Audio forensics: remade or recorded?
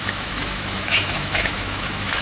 remade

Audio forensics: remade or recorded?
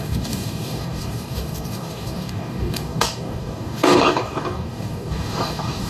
remade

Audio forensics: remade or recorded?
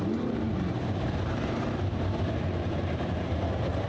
remade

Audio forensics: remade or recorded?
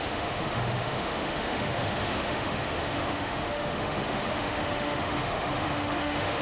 remade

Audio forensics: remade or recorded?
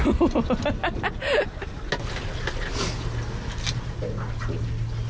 recorded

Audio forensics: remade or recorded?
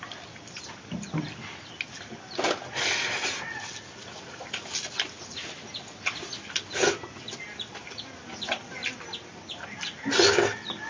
recorded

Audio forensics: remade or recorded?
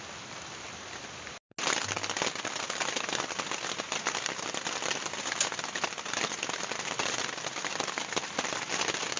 recorded